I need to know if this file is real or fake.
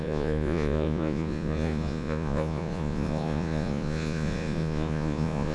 fake